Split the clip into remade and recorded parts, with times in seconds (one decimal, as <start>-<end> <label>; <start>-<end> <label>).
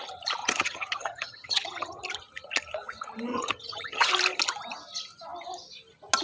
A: 0.0-0.4 recorded; 0.4-2.0 remade; 2.0-3.3 recorded; 3.3-4.1 remade; 4.1-6.2 recorded